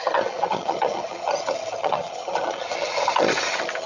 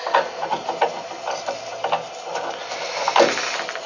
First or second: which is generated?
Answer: first